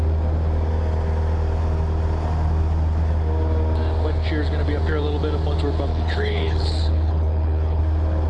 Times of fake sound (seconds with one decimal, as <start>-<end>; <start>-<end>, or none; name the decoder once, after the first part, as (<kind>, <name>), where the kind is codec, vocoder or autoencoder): 5.9-7.8 (codec, HILCodec)